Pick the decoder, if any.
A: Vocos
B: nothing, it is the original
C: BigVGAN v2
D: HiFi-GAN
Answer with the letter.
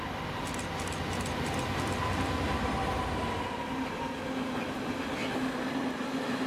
B